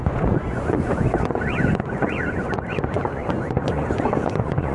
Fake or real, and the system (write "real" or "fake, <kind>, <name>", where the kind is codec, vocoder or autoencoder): fake, vocoder, Vocos